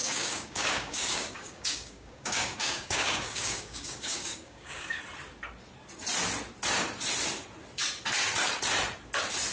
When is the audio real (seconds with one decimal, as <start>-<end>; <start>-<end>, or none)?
5.0-9.5